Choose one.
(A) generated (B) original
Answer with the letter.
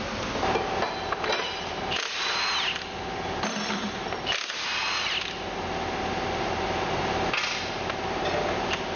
B